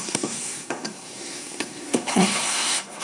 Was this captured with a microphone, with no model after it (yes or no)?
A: no